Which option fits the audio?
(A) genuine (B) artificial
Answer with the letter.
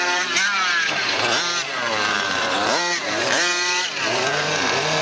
B